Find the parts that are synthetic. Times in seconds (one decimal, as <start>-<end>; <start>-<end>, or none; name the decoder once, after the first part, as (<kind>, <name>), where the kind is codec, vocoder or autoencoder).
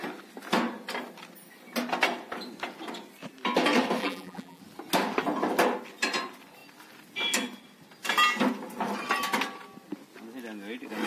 4.0-4.6 (vocoder, BigVGAN v2)